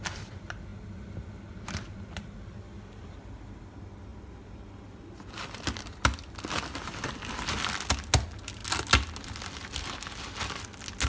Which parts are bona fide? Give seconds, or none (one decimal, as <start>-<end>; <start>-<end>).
0.0-11.1